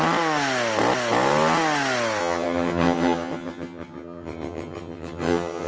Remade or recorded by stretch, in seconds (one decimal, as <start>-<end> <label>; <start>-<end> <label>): 0.0-2.2 recorded; 2.2-5.7 remade